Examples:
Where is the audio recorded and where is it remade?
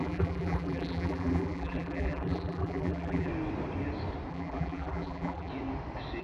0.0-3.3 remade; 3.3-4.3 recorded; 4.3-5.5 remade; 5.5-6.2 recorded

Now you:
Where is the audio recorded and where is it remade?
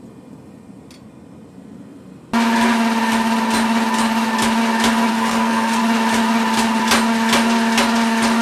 0.0-5.1 recorded; 5.1-5.8 remade; 5.8-8.4 recorded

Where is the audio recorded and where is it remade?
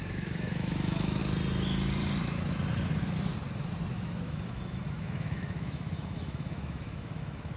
0.0-1.2 remade; 1.2-3.9 recorded; 3.9-7.6 remade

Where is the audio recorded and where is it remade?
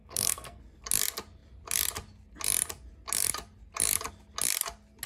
0.0-0.6 remade; 0.6-5.1 recorded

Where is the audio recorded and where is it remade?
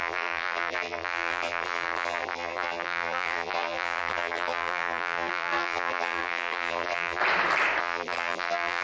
0.0-7.2 remade; 7.2-7.8 recorded; 7.8-8.8 remade